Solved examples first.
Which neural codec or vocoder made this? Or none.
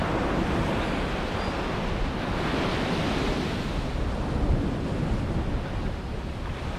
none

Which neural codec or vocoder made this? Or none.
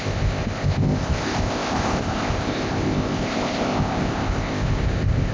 codec, ZipCodec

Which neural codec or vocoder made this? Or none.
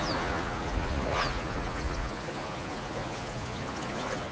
vocoder, Vocos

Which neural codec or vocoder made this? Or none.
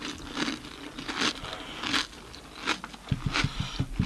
none